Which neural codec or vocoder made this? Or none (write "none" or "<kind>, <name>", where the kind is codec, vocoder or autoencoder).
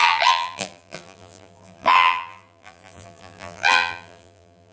vocoder, BigVGAN v2